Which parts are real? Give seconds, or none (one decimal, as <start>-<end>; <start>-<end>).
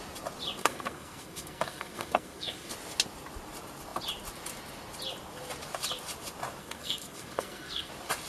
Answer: 0.0-0.6; 2.7-6.6; 7.9-8.3